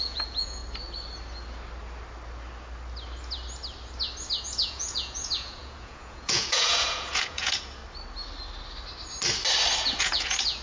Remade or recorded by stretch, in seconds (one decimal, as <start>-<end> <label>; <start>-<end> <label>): 0.0-0.6 remade; 0.6-4.4 recorded; 4.4-7.8 remade; 7.8-10.0 recorded; 10.0-10.6 remade